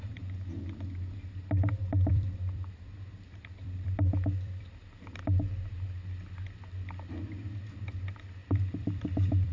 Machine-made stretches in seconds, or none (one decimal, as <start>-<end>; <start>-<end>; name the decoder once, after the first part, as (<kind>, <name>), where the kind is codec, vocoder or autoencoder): 2.1-4.7 (vocoder, BigVGAN v2); 8.4-9.5